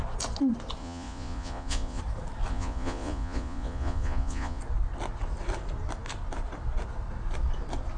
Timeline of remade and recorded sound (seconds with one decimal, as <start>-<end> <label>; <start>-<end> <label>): 0.0-0.8 recorded; 0.8-2.0 remade; 2.0-2.5 recorded; 2.5-4.6 remade; 4.6-8.0 recorded